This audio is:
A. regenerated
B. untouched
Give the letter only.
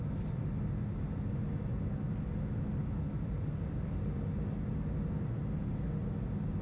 B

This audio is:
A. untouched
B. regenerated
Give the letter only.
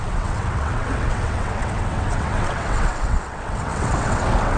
B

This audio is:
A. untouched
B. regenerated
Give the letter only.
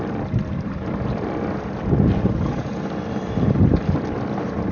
A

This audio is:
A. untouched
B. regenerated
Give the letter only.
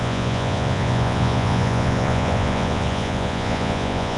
B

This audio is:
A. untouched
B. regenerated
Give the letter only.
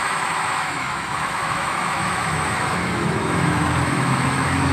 B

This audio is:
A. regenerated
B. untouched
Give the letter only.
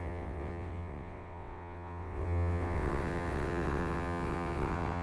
A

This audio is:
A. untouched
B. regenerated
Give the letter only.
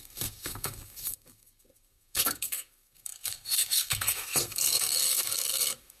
B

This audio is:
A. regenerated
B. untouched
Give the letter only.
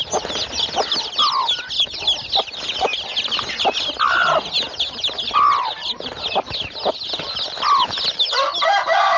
B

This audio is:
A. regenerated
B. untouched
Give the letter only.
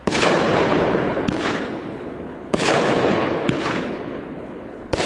A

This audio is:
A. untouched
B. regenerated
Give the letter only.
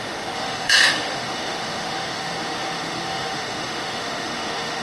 B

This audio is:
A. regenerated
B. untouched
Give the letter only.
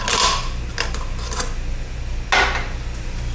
B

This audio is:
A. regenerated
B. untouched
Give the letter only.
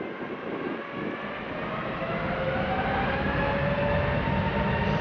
B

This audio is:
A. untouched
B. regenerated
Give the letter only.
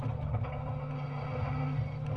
A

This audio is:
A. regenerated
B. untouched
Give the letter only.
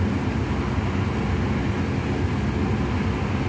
B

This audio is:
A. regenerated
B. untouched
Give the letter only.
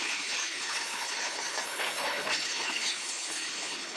A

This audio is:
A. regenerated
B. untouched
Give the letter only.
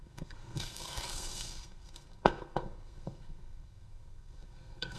A